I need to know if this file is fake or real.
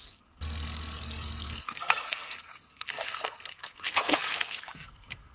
fake